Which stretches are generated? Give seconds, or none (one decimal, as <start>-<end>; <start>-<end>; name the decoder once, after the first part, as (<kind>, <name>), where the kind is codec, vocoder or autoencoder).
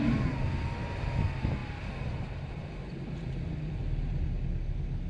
none